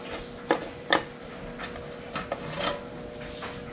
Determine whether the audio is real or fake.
real